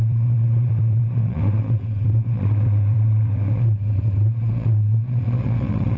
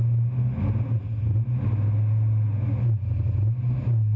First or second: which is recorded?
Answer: second